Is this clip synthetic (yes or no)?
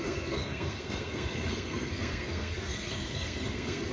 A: yes